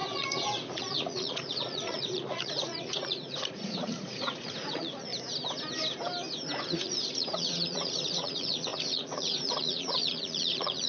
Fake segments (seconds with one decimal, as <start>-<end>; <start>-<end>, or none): 0.0-5.1; 6.6-10.9